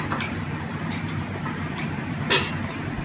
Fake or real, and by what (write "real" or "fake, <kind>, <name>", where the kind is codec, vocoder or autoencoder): fake, vocoder, BigVGAN v2